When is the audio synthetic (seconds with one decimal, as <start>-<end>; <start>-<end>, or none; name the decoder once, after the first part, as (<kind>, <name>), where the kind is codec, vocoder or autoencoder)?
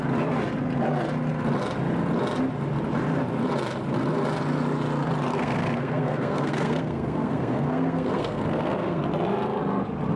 5.3-9.0 (codec, SNAC)